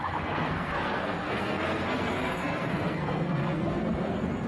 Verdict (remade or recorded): remade